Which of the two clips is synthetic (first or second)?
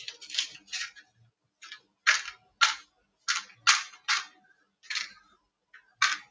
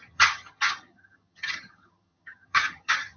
second